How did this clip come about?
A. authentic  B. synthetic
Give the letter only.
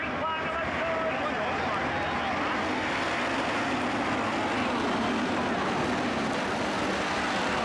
A